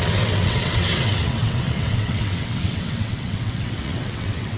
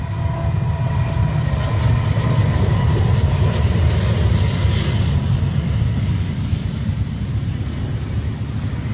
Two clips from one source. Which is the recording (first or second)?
second